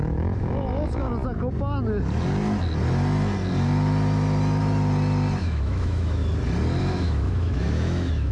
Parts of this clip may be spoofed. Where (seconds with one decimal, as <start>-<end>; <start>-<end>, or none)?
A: 0.0-1.1; 5.4-6.2; 6.8-8.3